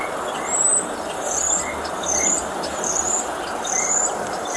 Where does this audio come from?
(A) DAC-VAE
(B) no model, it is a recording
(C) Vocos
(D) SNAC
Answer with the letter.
B